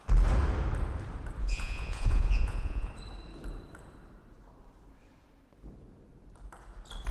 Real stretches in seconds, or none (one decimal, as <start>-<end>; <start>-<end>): 0.0-1.4; 2.9-7.1